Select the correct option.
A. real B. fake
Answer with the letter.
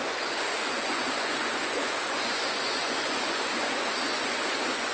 B